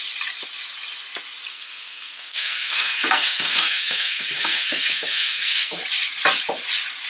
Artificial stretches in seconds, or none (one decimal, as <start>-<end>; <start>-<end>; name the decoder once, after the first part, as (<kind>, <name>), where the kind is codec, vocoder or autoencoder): 1.5-5.8 (codec, SNAC)